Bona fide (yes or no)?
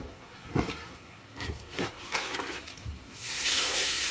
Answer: no